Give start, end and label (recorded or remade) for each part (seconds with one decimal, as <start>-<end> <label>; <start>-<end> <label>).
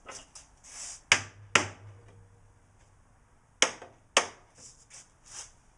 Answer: 0.0-5.8 recorded